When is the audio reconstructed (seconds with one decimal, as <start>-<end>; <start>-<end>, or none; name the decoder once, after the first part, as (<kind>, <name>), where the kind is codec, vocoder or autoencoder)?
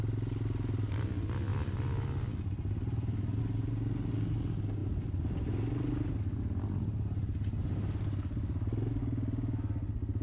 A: none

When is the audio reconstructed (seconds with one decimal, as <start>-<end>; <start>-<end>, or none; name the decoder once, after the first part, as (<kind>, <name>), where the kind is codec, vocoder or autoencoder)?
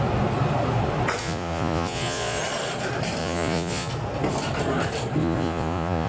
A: 1.2-2.4 (vocoder, Vocos); 3.2-3.9; 5.2-6.1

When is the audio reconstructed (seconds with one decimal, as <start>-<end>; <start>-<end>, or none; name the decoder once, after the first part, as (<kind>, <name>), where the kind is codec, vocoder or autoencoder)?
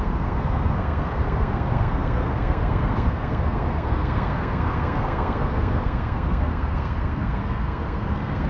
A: 0.0-8.5 (codec, SNAC)